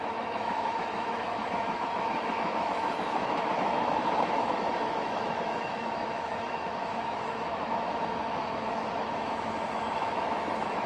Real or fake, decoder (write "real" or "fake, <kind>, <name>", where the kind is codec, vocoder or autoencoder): fake, autoencoder, DAC-VAE